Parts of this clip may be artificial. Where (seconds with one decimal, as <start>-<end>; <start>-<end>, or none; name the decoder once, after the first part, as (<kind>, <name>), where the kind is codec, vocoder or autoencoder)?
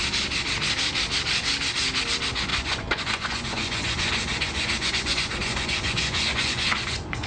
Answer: 2.5-7.3 (vocoder, Vocos)